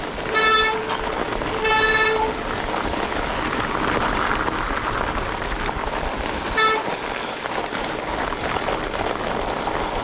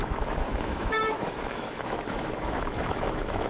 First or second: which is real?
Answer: first